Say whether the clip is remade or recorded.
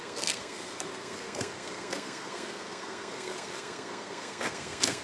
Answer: remade